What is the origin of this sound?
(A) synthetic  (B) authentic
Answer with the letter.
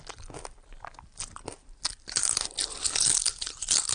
B